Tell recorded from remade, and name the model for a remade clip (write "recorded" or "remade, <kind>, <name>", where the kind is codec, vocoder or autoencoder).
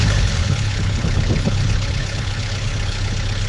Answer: remade, codec, HILCodec